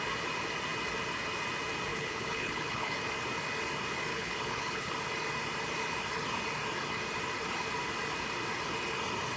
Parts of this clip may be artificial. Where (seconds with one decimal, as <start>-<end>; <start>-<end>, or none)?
1.9-3.0; 4.1-4.9

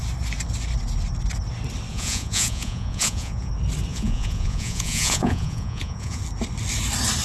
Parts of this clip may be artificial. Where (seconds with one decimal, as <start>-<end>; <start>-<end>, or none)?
1.9-3.5; 3.9-6.2

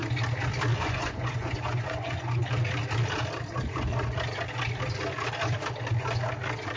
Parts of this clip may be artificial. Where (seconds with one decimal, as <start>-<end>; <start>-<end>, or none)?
0.8-2.4

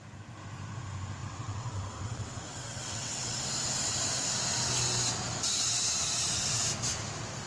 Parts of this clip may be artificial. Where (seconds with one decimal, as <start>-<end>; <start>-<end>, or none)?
1.2-3.4

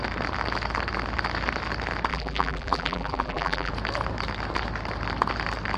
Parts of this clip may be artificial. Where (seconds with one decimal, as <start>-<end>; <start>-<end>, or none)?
2.1-3.7

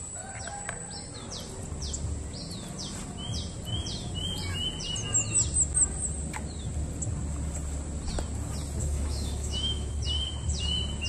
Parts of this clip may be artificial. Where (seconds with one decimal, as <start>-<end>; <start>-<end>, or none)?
8.8-9.9